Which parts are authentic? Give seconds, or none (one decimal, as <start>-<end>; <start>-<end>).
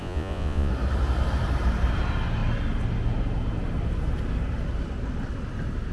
0.7-5.9